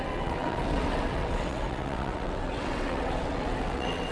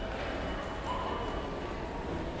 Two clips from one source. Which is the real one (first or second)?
second